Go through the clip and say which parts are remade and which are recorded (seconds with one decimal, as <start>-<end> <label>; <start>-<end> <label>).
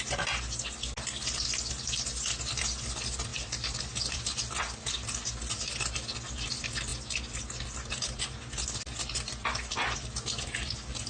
0.0-3.3 recorded; 3.3-4.9 remade; 4.9-11.1 recorded